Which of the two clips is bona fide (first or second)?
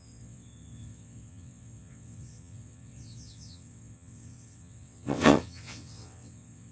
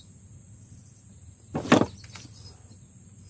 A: second